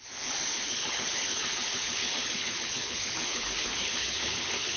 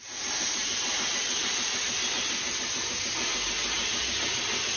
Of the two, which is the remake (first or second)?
first